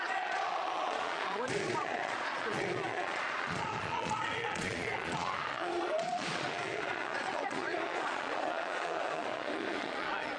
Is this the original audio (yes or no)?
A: no